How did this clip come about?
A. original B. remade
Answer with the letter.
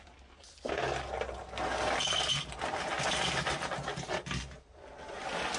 A